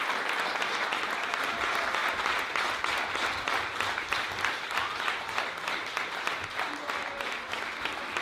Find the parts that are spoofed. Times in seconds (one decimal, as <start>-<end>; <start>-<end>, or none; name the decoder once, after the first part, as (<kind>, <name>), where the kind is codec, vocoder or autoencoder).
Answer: none